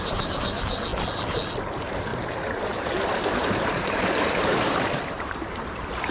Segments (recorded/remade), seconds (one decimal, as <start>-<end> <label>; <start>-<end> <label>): 0.0-0.9 remade; 0.9-1.7 recorded; 1.7-6.1 remade